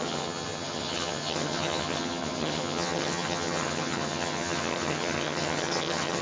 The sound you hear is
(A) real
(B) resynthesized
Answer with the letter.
B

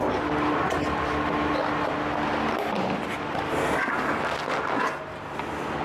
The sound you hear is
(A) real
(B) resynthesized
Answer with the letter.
A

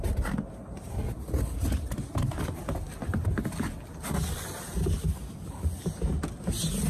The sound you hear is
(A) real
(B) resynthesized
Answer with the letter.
A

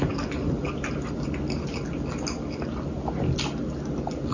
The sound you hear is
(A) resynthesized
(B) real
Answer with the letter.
B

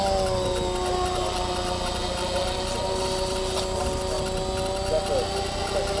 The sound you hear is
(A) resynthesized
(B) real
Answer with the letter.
B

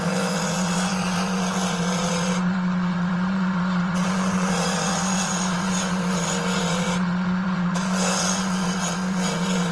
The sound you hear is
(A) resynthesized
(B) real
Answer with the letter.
A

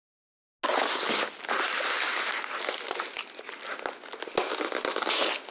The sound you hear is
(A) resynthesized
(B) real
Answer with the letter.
B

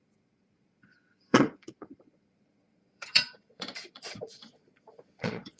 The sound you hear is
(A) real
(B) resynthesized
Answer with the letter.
B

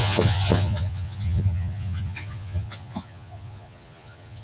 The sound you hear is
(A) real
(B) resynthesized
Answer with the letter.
B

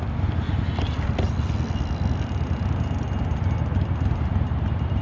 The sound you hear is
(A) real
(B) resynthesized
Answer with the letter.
A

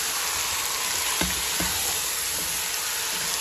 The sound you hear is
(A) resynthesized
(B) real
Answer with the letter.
B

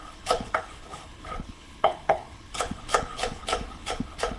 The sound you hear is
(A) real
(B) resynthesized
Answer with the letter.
B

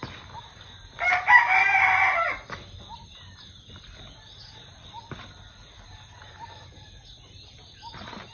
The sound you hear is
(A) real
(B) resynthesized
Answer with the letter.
A